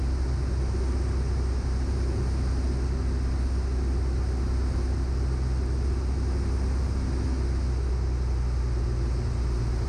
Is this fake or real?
real